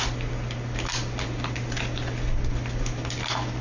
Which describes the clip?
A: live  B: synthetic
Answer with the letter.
A